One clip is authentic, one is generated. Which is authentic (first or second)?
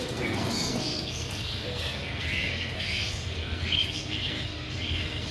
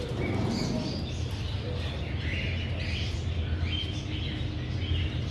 second